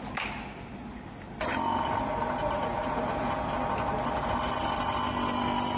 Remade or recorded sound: recorded